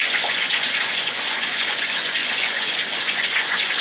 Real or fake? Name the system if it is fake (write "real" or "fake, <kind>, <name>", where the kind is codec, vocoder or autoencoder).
fake, vocoder, Vocos